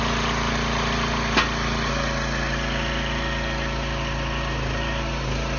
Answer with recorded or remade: recorded